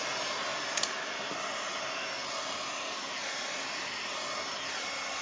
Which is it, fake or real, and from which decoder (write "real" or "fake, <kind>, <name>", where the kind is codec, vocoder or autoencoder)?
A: real